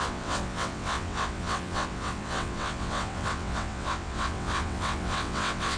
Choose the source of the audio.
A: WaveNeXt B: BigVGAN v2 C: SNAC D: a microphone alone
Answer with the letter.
A